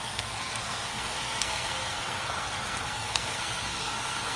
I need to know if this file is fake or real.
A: fake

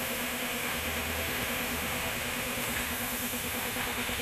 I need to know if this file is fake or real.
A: fake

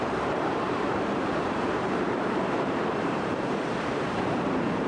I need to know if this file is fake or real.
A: fake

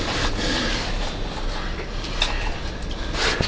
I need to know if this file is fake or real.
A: real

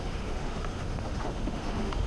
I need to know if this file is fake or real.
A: fake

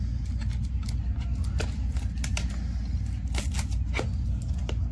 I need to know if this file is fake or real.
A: real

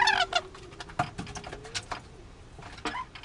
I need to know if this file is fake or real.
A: real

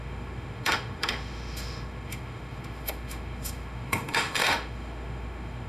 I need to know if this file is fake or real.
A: fake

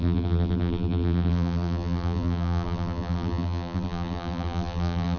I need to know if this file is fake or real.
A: fake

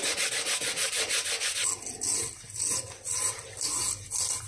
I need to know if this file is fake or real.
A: real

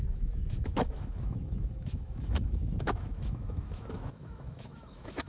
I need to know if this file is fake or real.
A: fake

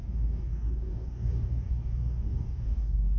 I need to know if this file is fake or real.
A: fake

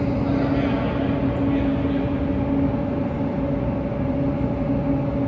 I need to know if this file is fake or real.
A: real